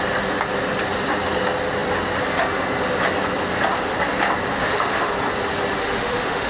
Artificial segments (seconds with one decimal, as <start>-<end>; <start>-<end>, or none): 4.5-5.1; 5.8-6.5